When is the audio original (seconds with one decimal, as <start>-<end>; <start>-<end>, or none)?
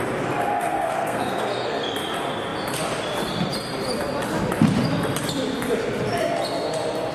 0.0-0.7; 1.9-7.1